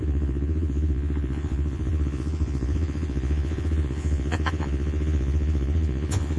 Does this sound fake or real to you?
fake